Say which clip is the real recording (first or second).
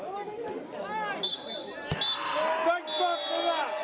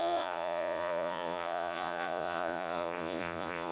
first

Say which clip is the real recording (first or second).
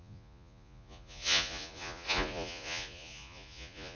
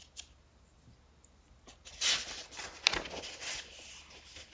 second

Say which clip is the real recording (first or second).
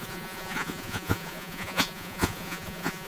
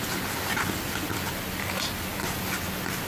second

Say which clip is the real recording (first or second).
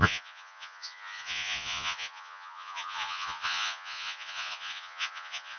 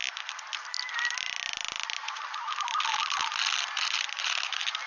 second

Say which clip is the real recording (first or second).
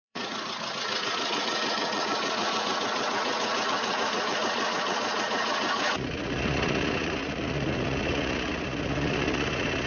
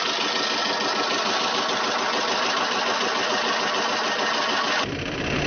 second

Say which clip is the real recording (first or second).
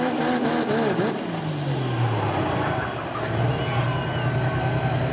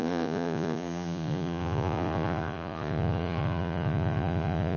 first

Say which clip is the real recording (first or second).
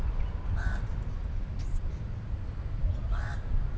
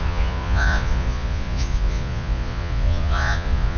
first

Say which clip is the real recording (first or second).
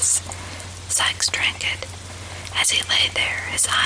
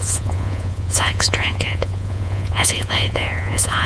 first